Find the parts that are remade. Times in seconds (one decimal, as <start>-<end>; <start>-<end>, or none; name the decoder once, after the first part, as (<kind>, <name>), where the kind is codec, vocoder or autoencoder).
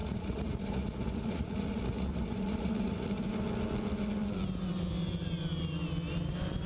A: 0.0-3.3 (vocoder, Vocos)